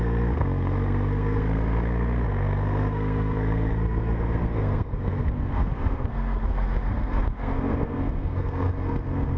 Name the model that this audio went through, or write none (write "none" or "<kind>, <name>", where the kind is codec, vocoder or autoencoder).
codec, SNAC